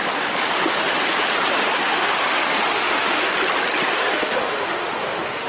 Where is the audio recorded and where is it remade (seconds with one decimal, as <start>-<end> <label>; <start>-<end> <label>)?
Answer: 0.0-1.8 recorded; 1.8-3.3 remade; 3.3-3.9 recorded; 3.9-5.5 remade